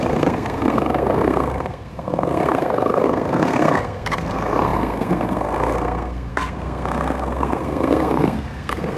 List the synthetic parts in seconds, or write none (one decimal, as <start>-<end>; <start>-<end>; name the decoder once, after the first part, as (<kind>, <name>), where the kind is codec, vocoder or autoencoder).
0.0-9.0 (codec, SNAC)